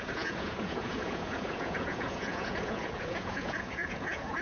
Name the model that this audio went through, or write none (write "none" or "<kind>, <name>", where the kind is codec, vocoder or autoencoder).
vocoder, Vocos